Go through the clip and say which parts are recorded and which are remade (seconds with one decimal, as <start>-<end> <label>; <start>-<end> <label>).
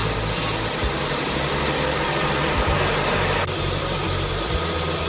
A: 0.0-5.1 recorded